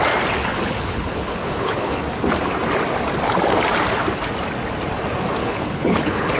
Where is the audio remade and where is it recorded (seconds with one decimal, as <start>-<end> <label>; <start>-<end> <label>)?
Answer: 0.0-0.4 recorded; 0.4-2.0 remade; 2.0-5.4 recorded; 5.4-6.4 remade